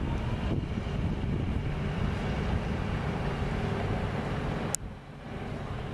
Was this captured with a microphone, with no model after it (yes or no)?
yes